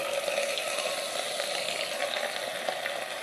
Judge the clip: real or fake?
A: real